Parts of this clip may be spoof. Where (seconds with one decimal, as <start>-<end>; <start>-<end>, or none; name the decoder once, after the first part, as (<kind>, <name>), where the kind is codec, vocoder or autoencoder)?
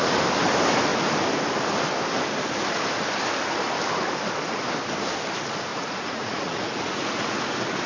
5.7-7.4 (vocoder, Vocos)